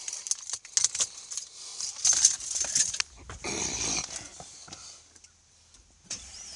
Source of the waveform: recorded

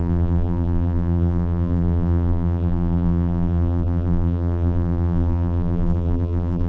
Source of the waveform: remade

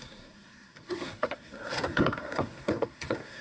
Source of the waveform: remade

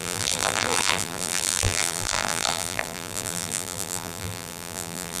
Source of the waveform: remade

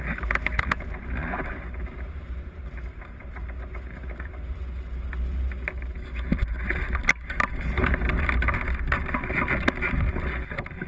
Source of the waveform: recorded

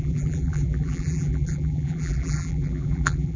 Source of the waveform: remade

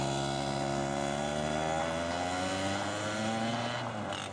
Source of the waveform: recorded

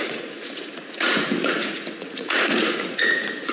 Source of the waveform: remade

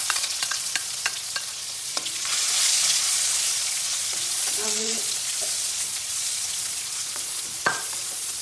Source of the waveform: remade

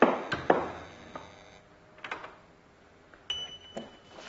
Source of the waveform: recorded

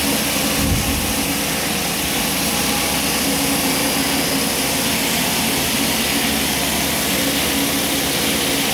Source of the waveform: recorded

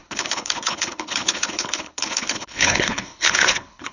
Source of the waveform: remade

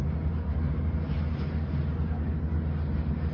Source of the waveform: recorded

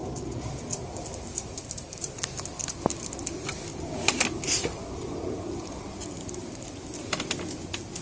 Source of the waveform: recorded